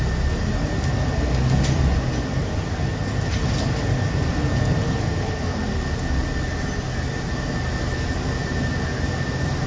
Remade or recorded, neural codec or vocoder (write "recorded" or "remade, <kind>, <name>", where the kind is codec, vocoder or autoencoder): recorded